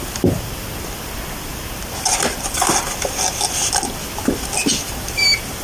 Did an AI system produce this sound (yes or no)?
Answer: no